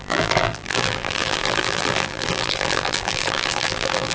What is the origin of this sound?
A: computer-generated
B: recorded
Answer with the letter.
A